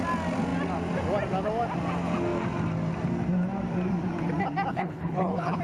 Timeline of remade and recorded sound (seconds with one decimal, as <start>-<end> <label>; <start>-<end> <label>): 0.0-4.7 recorded; 4.7-5.6 remade